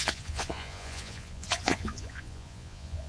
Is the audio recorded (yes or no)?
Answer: no